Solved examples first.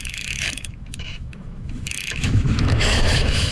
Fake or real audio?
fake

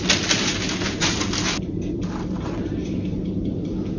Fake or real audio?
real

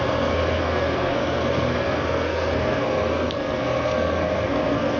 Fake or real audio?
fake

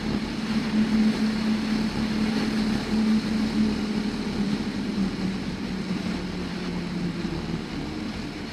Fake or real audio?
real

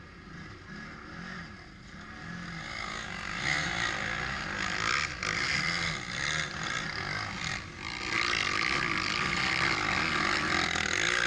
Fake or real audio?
real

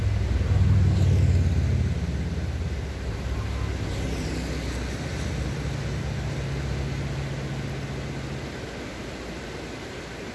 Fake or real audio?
real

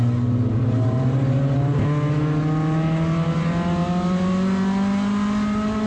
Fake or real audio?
real